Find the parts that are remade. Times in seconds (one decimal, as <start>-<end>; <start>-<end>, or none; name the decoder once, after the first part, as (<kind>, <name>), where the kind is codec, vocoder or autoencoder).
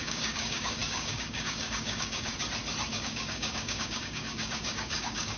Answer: 0.0-2.3 (codec, DAC); 2.9-5.4